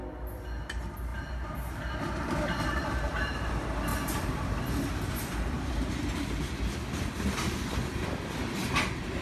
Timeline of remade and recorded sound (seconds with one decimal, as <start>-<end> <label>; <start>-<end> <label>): 0.0-1.1 recorded; 1.1-3.5 remade; 3.5-3.9 recorded; 3.9-4.6 remade; 4.6-9.2 recorded